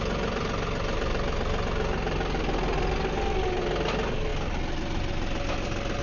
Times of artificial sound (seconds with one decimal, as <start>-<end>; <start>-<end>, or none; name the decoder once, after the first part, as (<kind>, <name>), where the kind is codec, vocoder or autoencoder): none